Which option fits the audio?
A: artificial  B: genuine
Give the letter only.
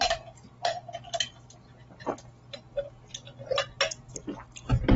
B